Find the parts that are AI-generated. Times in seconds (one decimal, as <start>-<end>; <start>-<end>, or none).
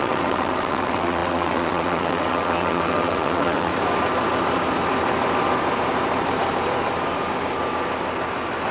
0.0-3.7